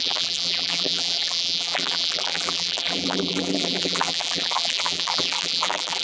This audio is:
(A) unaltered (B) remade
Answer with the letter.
B